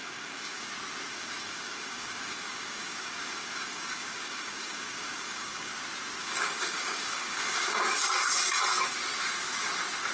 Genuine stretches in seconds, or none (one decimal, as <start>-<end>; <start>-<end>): 0.7-1.1; 5.7-6.2; 8.3-10.1